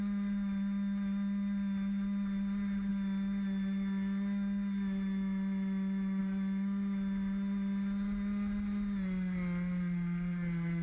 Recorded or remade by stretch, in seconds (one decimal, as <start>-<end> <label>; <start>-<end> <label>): 0.0-10.8 recorded